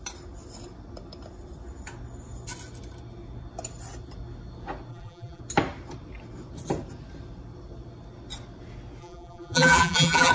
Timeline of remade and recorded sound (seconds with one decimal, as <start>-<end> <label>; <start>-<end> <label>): 0.0-4.9 recorded; 4.9-5.4 remade; 5.4-9.0 recorded; 9.0-10.3 remade